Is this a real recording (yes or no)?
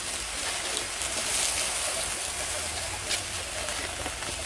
yes